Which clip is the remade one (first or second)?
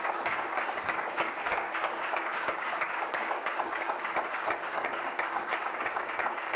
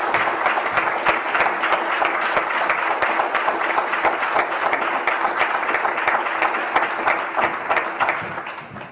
first